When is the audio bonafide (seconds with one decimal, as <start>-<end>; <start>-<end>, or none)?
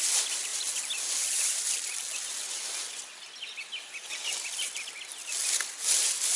0.0-6.4